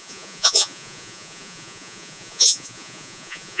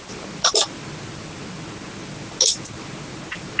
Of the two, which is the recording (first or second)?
second